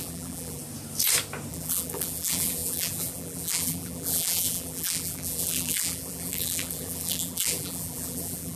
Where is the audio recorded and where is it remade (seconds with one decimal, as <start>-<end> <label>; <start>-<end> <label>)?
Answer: 0.0-0.6 remade; 0.6-1.5 recorded; 1.5-8.6 remade